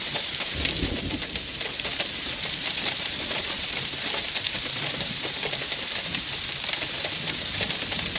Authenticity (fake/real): fake